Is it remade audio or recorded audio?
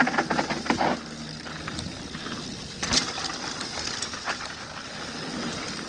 recorded